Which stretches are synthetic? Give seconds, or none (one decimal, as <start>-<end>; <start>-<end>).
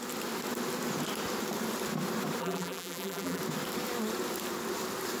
2.4-3.4